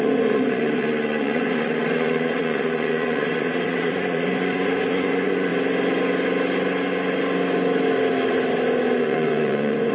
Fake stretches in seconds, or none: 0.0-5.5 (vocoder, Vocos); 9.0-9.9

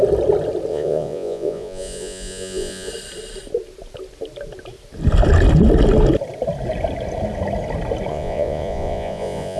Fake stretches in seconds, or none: 0.7-2.9 (vocoder, Vocos); 8.1-9.6

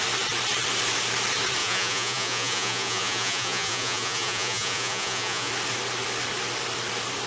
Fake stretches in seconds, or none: 1.6-5.5 (vocoder, Vocos)

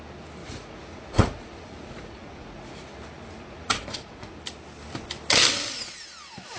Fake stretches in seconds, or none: 0.4-4.4 (vocoder, Vocos)

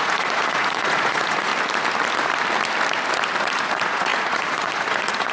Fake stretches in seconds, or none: 0.0-1.5 (vocoder, Vocos); 3.4-5.3